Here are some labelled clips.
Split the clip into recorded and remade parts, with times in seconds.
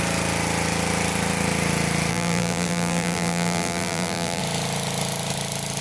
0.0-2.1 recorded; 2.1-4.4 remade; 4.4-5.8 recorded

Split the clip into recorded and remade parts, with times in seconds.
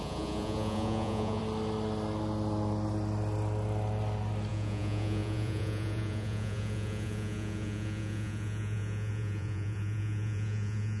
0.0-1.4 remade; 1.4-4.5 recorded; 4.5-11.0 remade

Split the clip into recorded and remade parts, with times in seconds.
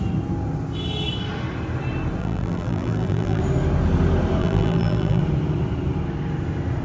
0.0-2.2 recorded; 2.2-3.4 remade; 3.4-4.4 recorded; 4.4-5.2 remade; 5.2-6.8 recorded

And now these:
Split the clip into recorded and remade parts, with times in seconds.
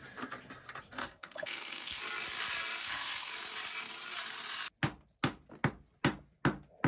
0.0-1.0 recorded; 1.0-2.0 remade; 2.0-2.8 recorded; 2.8-3.3 remade; 3.3-6.9 recorded